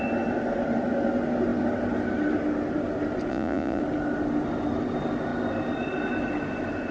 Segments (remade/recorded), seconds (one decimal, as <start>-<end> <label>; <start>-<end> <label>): 0.0-3.3 recorded; 3.3-3.8 remade; 3.8-6.9 recorded